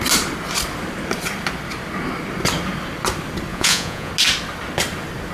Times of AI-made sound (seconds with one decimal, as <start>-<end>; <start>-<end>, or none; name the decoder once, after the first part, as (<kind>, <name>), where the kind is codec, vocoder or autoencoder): 3.5-4.1 (vocoder, Vocos)